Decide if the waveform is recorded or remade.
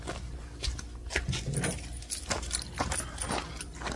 recorded